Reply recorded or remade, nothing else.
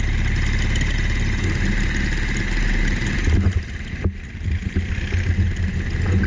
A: recorded